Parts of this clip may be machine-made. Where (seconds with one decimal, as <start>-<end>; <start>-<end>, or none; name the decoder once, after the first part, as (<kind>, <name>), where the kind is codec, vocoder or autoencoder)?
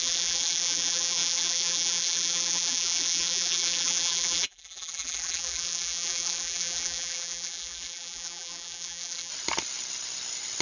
0.0-9.3 (vocoder, BigVGAN v2)